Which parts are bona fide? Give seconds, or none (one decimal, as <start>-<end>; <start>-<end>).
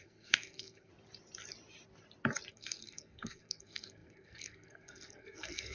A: 0.9-2.5